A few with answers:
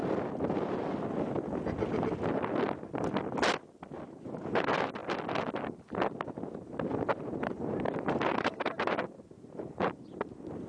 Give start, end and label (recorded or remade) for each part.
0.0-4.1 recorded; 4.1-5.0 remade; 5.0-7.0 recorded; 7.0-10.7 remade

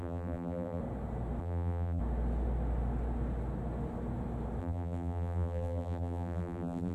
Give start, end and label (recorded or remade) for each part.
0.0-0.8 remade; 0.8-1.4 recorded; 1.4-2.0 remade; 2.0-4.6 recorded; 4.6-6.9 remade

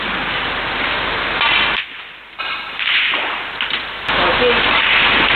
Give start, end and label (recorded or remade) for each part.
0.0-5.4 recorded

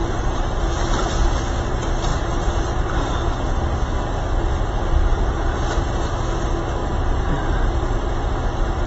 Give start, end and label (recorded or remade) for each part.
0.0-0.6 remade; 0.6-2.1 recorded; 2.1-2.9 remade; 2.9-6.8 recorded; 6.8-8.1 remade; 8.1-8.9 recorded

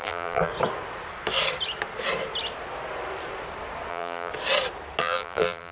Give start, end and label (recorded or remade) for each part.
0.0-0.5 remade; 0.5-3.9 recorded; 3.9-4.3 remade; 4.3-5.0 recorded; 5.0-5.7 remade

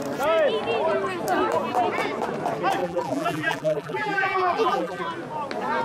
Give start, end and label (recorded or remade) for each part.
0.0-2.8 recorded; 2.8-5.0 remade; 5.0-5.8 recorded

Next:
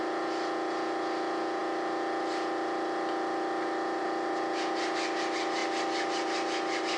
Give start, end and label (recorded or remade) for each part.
0.0-7.0 recorded